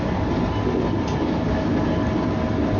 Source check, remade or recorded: recorded